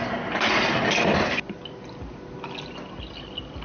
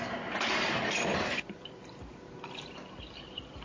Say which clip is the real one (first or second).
first